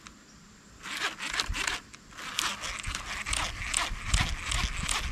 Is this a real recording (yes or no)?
yes